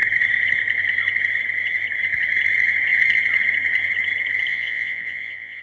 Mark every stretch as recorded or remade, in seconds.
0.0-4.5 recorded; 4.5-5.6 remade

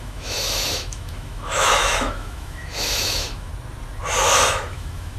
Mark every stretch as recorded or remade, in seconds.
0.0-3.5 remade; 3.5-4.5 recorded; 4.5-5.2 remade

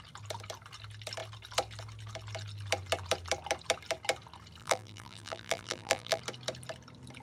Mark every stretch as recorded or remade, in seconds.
0.0-4.6 recorded; 4.6-6.2 remade; 6.2-7.2 recorded

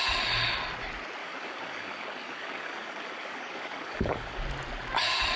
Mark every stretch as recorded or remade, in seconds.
0.0-1.2 recorded; 1.2-4.4 remade; 4.4-5.4 recorded